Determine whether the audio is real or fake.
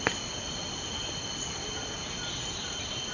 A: real